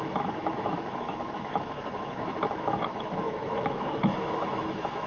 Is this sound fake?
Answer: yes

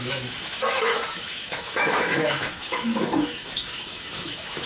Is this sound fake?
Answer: yes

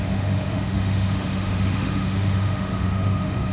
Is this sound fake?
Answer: yes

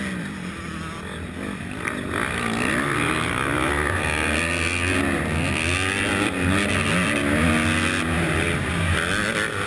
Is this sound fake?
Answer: no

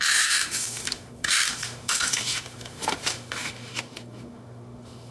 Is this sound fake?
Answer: yes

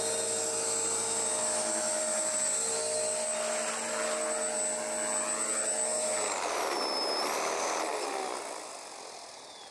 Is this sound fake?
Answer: no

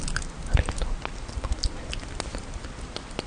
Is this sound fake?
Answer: no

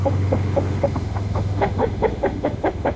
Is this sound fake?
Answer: yes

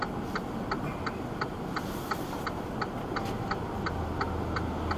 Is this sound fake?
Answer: no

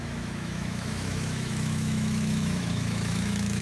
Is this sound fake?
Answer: yes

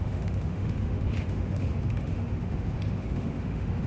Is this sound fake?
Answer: yes